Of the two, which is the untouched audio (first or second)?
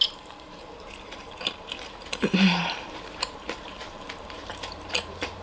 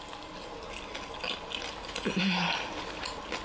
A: second